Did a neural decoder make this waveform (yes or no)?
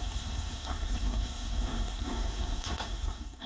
yes